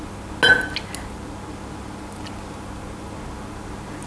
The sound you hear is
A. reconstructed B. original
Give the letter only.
B